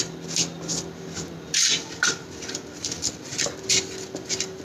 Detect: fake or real real